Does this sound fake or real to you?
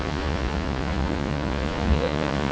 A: fake